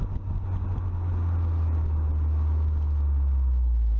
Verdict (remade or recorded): recorded